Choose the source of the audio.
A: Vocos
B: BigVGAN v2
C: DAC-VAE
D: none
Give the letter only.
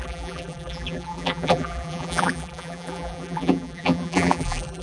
B